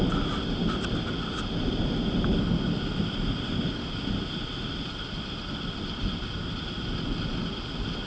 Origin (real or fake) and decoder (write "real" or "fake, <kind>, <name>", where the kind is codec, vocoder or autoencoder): real